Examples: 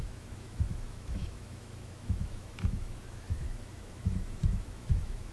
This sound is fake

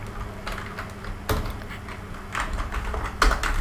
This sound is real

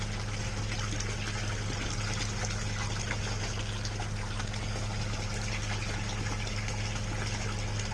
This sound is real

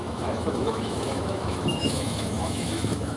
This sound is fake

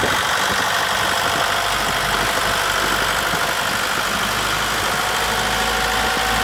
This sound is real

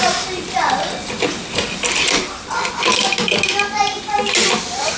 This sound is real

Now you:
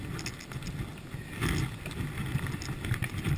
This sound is real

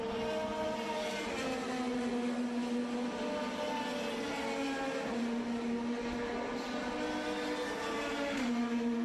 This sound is real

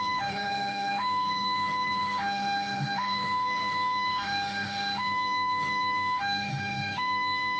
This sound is fake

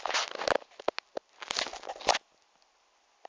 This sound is real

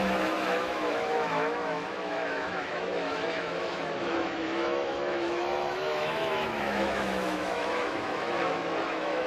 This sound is fake